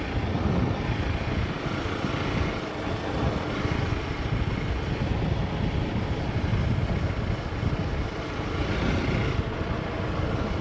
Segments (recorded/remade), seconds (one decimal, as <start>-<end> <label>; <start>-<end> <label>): 0.0-10.6 recorded